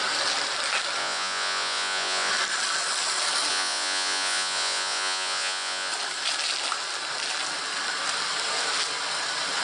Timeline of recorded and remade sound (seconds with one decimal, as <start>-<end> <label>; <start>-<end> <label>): 0.0-1.0 recorded; 1.0-2.3 remade; 2.3-3.5 recorded; 3.5-5.9 remade; 5.9-9.6 recorded